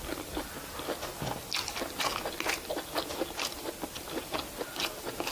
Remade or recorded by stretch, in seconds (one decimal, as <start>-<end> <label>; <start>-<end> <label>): 0.0-5.3 recorded